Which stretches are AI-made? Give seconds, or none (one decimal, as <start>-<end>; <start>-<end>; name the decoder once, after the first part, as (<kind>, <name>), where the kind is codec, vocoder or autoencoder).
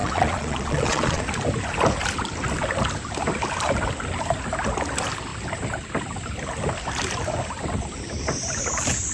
0.0-1.2 (vocoder, Vocos)